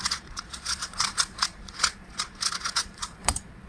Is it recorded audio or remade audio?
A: remade